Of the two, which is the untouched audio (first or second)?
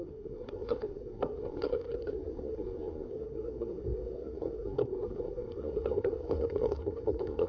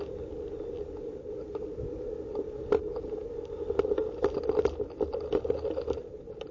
second